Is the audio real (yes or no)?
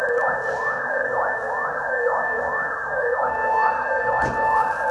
no